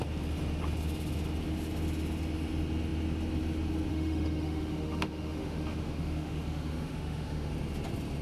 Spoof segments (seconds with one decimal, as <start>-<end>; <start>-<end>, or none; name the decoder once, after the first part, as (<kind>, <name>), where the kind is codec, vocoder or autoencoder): 3.9-7.5 (autoencoder, DAC-VAE)